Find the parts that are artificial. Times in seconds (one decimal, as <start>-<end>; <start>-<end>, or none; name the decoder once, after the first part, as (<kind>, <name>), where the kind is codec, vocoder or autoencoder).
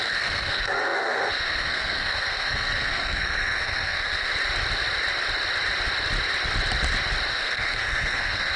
0.0-4.3 (codec, SNAC); 7.3-8.6